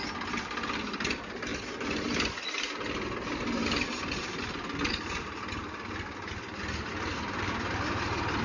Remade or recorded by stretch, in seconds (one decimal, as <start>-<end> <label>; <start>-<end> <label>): 0.0-8.4 recorded